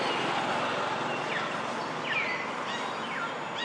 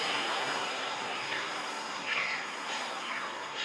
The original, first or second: first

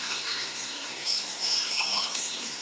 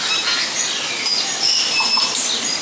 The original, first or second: second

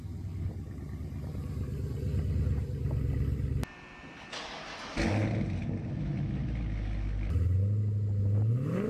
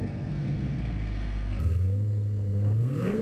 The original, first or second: first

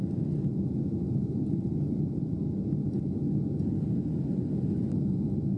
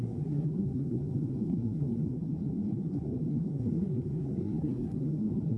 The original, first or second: first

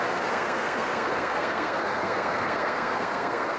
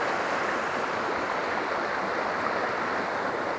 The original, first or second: second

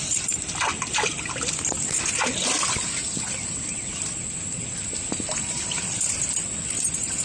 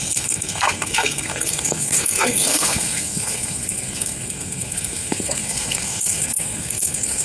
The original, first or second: first